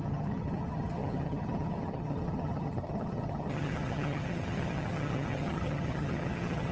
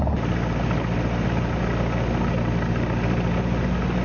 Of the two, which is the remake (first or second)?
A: first